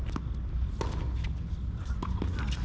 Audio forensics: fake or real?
real